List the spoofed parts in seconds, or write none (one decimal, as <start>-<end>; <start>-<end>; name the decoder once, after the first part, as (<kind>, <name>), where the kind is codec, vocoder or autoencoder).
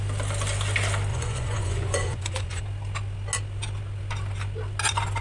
1.1-2.6 (vocoder, Vocos)